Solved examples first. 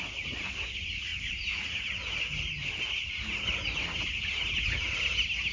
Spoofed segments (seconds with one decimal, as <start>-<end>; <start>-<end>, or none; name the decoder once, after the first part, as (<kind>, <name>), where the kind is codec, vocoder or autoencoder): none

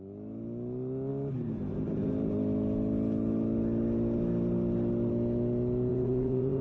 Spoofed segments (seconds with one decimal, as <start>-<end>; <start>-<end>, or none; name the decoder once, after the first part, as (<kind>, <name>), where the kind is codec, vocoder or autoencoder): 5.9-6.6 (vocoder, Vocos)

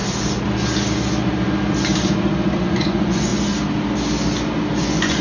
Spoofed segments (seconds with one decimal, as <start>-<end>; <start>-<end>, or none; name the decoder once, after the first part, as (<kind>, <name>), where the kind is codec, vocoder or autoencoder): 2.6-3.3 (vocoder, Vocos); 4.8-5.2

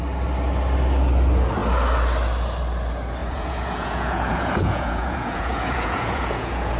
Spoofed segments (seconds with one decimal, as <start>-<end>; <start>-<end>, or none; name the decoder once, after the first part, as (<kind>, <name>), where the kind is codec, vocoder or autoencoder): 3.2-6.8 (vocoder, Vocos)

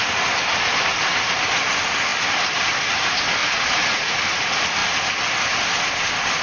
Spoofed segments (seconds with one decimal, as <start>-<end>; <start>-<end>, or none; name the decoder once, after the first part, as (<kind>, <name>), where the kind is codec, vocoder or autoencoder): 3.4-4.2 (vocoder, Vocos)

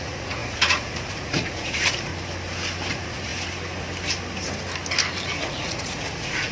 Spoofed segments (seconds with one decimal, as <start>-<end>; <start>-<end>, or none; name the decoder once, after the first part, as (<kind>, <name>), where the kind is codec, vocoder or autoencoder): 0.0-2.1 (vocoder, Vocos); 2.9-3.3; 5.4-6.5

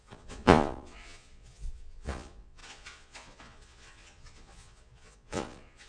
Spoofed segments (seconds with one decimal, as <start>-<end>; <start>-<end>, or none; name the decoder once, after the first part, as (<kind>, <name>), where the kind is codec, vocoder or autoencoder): 0.0-5.9 (vocoder, Vocos)